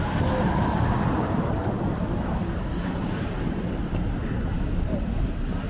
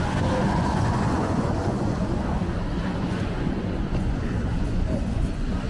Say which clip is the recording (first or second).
first